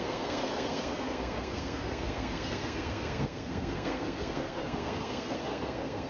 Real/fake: fake